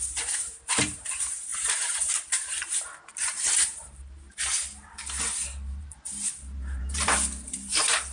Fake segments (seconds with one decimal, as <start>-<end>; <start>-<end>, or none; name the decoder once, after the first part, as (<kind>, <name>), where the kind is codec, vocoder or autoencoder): 0.0-8.1 (vocoder, BigVGAN v2)